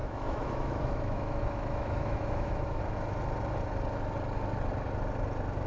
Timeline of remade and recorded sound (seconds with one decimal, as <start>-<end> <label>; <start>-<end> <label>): 0.0-2.8 remade; 2.8-5.7 recorded